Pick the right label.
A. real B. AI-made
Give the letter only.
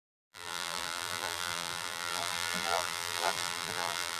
B